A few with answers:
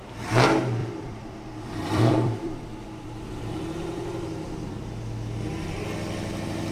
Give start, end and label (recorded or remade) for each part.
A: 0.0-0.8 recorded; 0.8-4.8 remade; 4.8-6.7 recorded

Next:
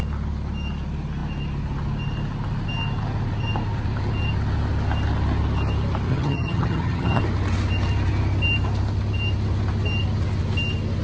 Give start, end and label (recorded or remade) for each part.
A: 0.0-6.1 recorded; 6.1-7.2 remade; 7.2-11.0 recorded

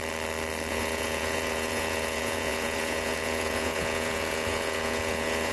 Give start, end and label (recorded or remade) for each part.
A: 0.0-0.7 recorded; 0.7-5.5 remade

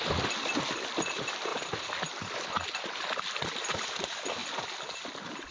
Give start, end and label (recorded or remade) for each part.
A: 0.0-5.5 recorded

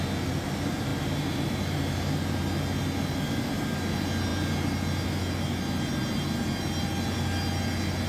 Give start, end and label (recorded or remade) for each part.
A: 0.0-8.1 recorded